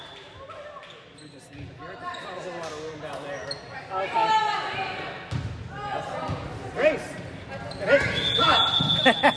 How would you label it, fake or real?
real